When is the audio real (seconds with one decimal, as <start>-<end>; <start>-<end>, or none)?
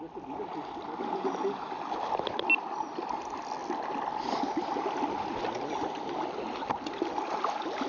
0.0-7.9